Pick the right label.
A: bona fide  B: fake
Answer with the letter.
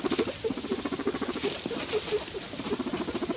A